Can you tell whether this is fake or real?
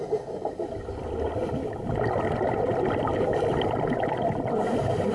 real